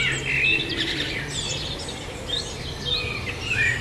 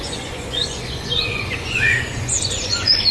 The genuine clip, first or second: first